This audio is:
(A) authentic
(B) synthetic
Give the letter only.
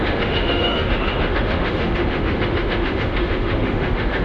B